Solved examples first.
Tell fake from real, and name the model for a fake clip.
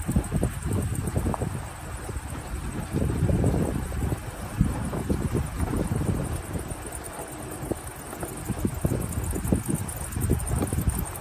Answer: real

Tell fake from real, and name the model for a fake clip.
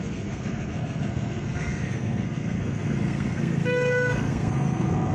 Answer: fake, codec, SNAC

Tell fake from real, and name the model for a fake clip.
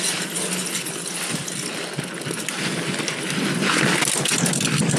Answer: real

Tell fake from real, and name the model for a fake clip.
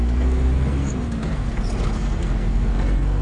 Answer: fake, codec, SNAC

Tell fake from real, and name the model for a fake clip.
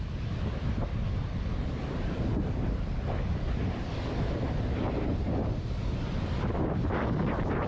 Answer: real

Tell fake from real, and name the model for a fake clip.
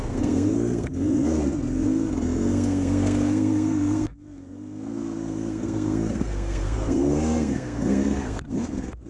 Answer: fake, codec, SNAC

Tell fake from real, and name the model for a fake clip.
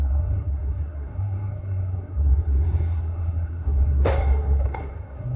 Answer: fake, codec, SNAC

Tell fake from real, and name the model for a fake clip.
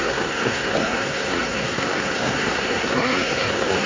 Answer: fake, codec, SNAC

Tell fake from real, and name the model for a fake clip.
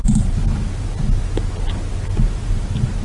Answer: real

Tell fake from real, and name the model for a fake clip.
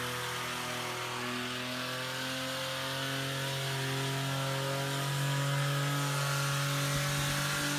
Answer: real